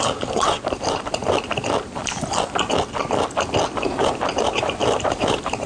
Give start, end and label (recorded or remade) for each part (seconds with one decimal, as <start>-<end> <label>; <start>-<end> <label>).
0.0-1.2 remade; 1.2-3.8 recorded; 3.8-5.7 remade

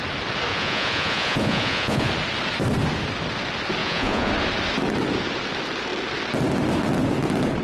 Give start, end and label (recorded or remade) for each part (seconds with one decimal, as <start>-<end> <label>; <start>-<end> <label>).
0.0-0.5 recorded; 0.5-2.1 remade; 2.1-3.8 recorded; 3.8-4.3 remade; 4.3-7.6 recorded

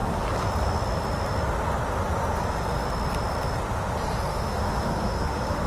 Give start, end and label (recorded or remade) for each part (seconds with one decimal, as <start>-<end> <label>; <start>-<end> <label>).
0.0-4.3 recorded; 4.3-5.7 remade

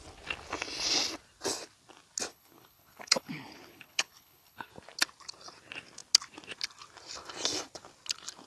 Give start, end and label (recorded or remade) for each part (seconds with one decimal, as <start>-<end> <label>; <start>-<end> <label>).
0.0-2.3 recorded; 2.3-4.7 remade; 4.7-8.5 recorded

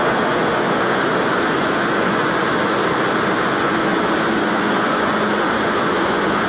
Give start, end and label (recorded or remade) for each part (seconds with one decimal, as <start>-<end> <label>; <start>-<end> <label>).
0.0-2.8 remade; 2.8-3.4 recorded; 3.4-6.5 remade

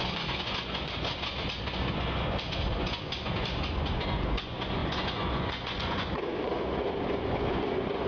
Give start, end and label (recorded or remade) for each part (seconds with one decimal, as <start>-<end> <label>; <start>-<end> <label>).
0.0-8.1 remade

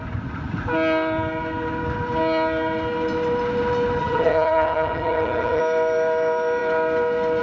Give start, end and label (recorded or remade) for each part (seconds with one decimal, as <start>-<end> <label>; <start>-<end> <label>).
0.0-4.0 recorded; 4.0-5.6 remade; 5.6-7.4 recorded

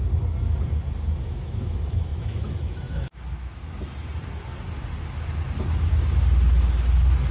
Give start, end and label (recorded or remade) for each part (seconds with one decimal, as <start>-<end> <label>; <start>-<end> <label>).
0.0-1.2 recorded; 1.2-3.6 remade; 3.6-7.3 recorded